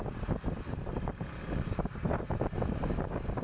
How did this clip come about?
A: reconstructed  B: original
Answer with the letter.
B